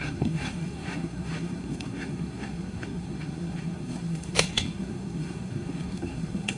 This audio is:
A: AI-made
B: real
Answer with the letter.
A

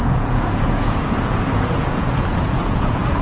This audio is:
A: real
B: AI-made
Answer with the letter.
B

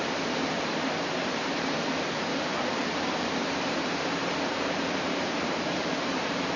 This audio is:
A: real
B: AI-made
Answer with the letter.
B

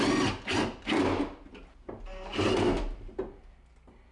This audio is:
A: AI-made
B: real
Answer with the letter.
B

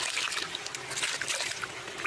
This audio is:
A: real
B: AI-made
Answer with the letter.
A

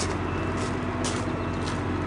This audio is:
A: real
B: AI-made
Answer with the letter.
A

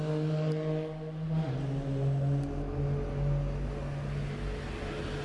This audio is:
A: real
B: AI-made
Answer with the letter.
A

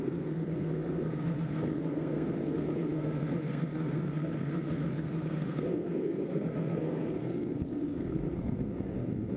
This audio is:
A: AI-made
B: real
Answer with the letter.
A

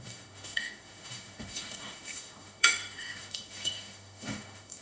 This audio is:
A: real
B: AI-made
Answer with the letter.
B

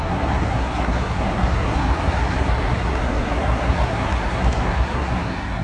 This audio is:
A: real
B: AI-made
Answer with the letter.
B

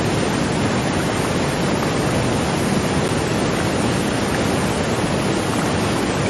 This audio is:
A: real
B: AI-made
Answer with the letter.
A